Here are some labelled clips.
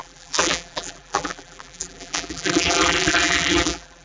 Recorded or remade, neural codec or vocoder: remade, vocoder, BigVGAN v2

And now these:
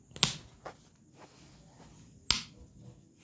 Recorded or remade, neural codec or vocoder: recorded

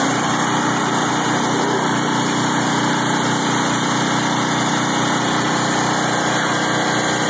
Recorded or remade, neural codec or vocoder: recorded